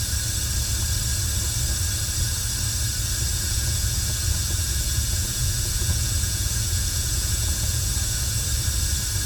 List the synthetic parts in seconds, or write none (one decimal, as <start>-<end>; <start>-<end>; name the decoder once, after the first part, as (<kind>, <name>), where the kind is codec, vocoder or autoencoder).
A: 3.3-8.4 (vocoder, Vocos)